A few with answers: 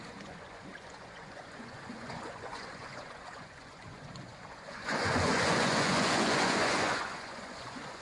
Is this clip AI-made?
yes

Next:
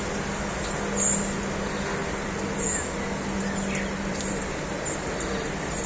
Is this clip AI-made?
no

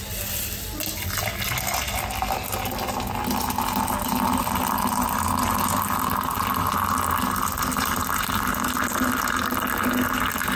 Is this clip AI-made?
no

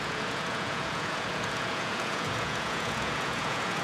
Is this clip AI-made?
yes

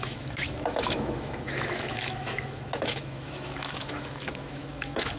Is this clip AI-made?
yes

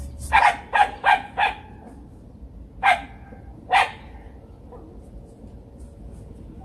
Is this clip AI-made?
no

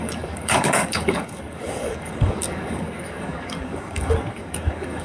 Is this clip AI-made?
yes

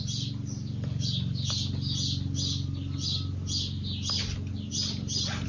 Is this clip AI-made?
no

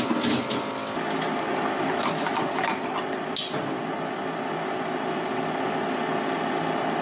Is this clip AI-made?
no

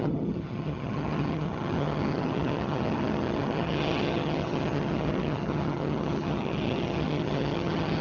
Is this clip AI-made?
yes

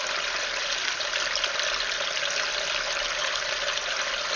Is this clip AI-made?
no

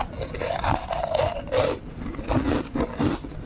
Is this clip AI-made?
no